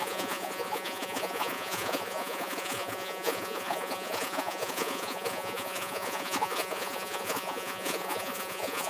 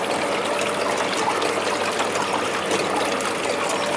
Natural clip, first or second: second